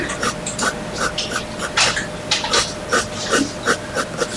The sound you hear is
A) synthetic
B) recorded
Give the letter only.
B